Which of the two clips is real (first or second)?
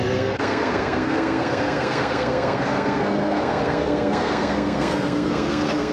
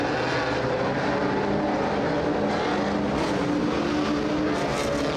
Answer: second